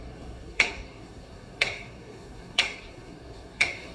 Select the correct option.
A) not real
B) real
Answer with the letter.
A